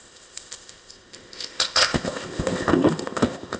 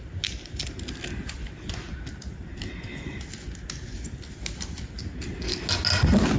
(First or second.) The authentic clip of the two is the second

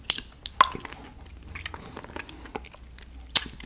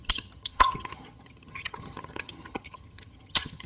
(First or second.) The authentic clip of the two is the first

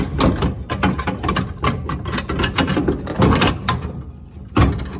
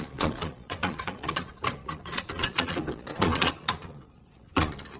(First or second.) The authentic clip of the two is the first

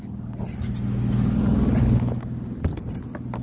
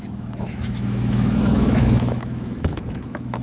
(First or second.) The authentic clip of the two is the first